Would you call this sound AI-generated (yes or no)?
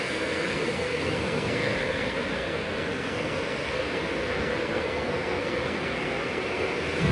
yes